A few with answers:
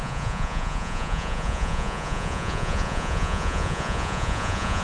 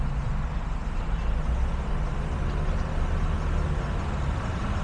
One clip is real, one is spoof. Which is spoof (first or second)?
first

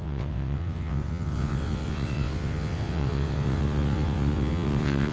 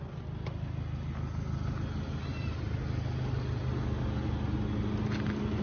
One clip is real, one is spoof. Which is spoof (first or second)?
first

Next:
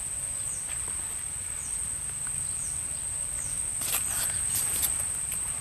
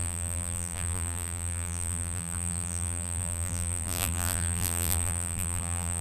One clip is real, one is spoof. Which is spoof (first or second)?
second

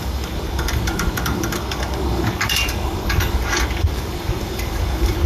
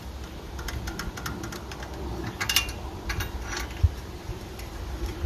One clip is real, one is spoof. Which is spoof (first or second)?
first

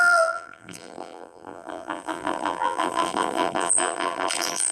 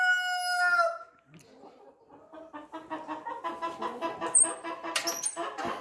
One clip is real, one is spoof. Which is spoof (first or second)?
first